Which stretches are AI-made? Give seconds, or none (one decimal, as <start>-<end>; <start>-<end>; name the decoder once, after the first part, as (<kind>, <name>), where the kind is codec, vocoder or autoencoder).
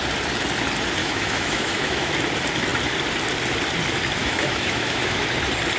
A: 1.0-2.1 (autoencoder, DAC-VAE); 4.2-5.2